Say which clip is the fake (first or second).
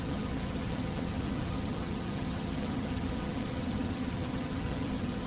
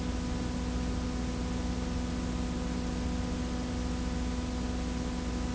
first